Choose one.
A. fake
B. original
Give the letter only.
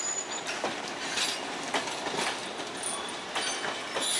B